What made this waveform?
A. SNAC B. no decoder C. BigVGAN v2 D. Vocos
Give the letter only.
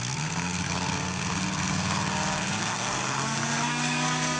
A